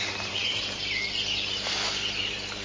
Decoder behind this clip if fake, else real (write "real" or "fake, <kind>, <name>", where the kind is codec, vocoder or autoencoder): fake, vocoder, BigVGAN v2